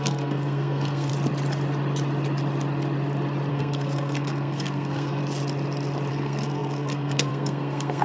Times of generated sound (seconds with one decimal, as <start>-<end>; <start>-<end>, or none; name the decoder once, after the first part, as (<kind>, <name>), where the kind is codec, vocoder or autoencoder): 0.0-1.1 (codec, SNAC); 3.5-5.2; 6.1-8.0